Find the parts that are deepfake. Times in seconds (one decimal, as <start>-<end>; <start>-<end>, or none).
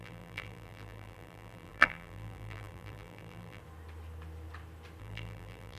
0.0-3.6; 5.0-5.8